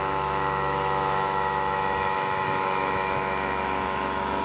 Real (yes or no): no